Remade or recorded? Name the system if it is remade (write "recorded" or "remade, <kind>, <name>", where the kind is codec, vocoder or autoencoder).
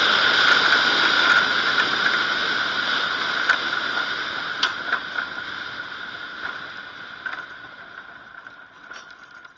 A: recorded